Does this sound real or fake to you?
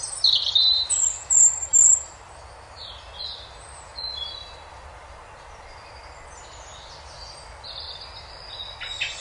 real